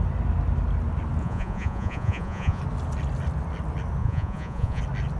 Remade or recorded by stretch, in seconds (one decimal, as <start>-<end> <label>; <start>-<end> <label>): 0.0-1.2 recorded; 1.2-2.6 remade; 2.6-4.0 recorded; 4.0-4.8 remade; 4.8-5.2 recorded